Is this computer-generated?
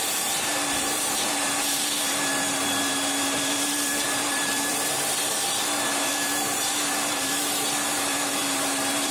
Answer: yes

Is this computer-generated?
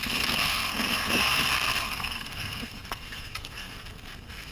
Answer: yes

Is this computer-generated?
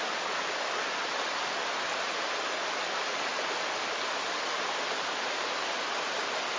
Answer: no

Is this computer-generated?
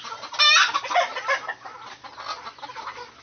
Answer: no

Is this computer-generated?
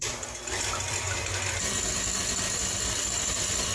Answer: yes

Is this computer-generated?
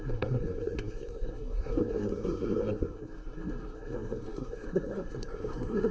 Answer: yes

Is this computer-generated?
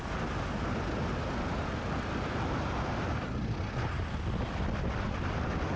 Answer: no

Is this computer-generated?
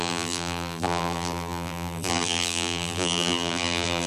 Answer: yes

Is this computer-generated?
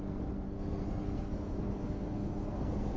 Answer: yes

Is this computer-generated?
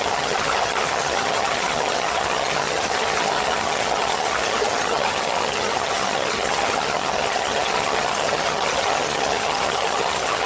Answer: yes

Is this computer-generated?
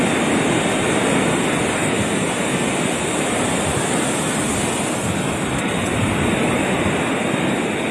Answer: no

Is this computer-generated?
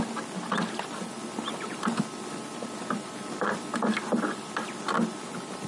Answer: no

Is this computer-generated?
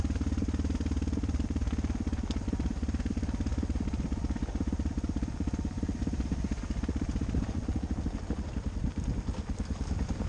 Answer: no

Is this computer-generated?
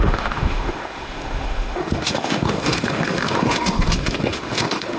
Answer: yes